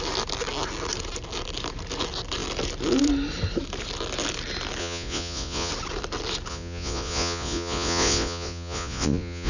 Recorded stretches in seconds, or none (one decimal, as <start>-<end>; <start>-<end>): 0.0-4.8; 5.7-6.5